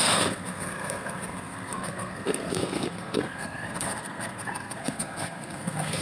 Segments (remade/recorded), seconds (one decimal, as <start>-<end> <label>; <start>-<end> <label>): 0.0-6.0 remade